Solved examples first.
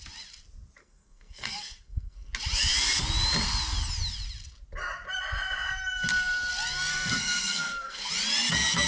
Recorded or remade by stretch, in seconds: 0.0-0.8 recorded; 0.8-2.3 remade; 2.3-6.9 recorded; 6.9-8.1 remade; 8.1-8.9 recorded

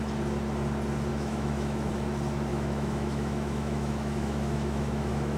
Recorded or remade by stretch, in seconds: 0.0-1.1 recorded; 1.1-1.9 remade; 1.9-2.5 recorded; 2.5-5.4 remade

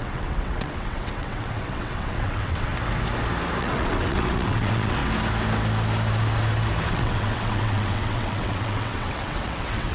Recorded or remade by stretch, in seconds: 0.0-2.7 remade; 2.7-3.6 recorded; 3.6-5.0 remade; 5.0-6.9 recorded; 6.9-9.9 remade